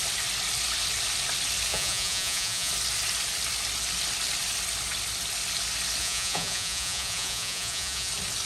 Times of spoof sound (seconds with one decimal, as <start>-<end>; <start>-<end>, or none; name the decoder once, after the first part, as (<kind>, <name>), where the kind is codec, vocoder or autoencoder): 1.7-2.7 (vocoder, Vocos); 6.0-8.1